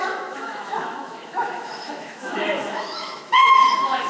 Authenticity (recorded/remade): remade